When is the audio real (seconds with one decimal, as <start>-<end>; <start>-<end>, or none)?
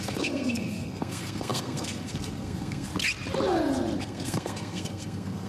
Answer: 2.9-4.0